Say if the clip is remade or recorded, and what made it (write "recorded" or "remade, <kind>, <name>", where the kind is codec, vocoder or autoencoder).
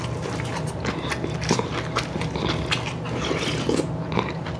recorded